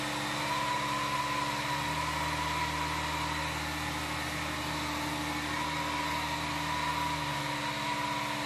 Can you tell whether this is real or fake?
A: real